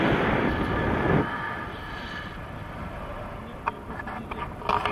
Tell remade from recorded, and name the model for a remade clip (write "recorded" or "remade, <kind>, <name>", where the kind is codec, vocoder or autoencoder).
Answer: recorded